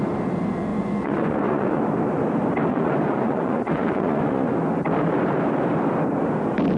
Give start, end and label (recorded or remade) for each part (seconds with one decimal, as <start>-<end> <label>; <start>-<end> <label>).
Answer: 0.0-0.7 recorded; 0.7-1.8 remade; 1.8-2.7 recorded; 2.7-4.5 remade; 4.5-6.8 recorded